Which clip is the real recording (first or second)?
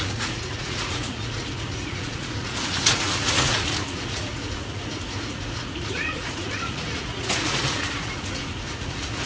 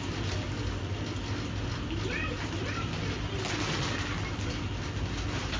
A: second